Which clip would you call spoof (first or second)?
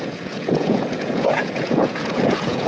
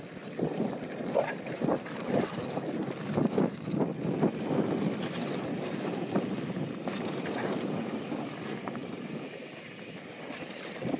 first